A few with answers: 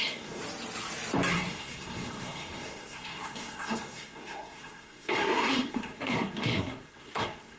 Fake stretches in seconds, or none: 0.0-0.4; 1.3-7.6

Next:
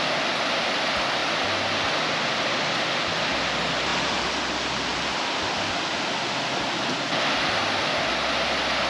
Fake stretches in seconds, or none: none

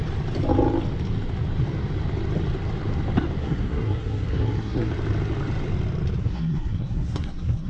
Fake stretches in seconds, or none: 3.4-4.9; 6.2-7.7

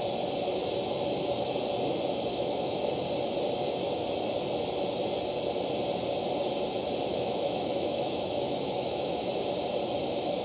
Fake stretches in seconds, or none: 2.3-2.9; 7.1-9.3

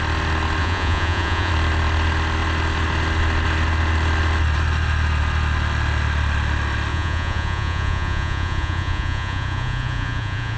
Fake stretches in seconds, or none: 0.6-1.5; 6.9-10.6

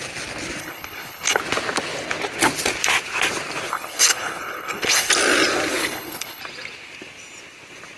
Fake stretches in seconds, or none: 0.6-1.4; 3.7-5.1; 5.8-6.4

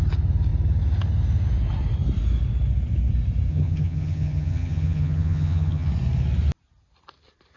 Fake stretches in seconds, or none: 3.5-5.9

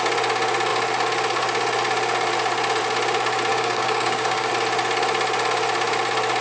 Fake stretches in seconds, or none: 3.5-4.5